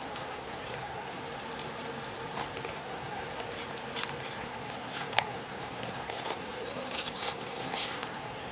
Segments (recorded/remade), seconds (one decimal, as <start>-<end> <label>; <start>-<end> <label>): 0.0-1.2 remade; 1.2-2.8 recorded; 2.8-3.2 remade; 3.2-4.4 recorded; 4.4-8.5 remade